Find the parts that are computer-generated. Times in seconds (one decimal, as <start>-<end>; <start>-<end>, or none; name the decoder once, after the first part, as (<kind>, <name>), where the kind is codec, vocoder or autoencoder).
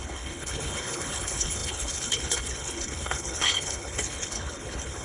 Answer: 0.0-5.0 (codec, HILCodec)